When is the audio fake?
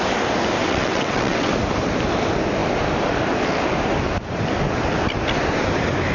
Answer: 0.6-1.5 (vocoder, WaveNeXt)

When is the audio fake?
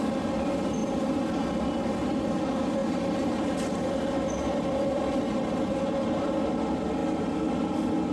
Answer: 2.8-5.8 (vocoder, BigVGAN v2); 7.0-8.1